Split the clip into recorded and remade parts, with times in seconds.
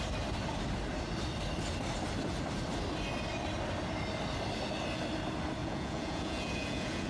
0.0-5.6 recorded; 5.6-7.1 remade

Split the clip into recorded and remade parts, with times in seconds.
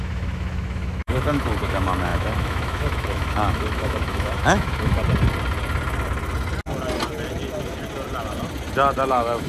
0.0-5.0 remade; 5.0-9.1 recorded; 9.1-9.5 remade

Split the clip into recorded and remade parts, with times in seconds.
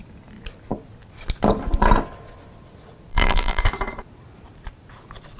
0.0-3.1 recorded; 3.1-3.6 remade; 3.6-5.4 recorded